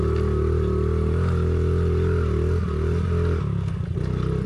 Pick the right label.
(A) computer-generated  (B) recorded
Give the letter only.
B